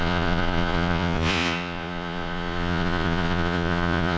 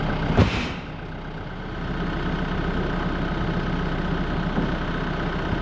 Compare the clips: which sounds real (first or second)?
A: second